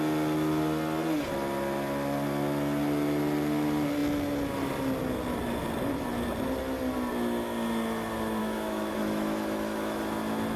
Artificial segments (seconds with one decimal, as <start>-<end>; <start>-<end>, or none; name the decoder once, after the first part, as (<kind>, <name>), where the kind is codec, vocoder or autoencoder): 8.4-10.0 (autoencoder, DAC-VAE)